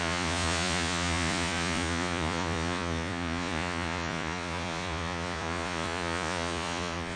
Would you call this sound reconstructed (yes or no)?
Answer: yes